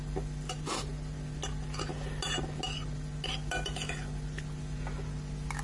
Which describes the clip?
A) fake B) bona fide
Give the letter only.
B